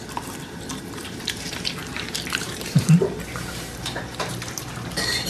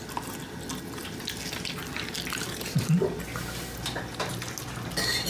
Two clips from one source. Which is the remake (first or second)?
first